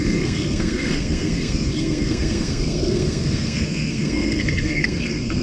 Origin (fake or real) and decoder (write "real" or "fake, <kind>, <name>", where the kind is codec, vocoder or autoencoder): fake, codec, SNAC